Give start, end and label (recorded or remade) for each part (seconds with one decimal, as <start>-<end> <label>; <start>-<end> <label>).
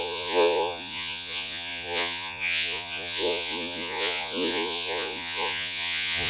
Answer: 0.0-6.3 remade